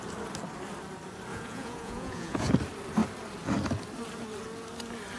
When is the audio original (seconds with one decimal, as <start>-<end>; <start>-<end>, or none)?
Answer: 0.0-1.3; 2.5-5.2